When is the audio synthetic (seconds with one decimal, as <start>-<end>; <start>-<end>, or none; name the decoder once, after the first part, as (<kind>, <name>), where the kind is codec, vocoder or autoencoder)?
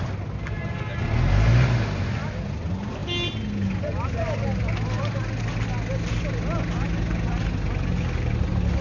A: none